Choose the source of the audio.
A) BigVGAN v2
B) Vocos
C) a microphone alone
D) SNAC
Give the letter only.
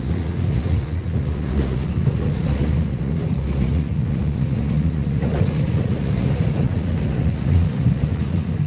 B